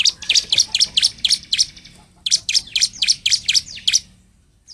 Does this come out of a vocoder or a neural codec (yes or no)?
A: no